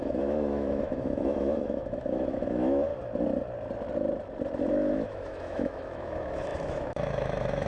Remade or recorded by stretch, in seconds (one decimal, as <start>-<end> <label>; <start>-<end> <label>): 0.0-2.9 remade; 2.9-4.7 recorded; 4.7-7.7 remade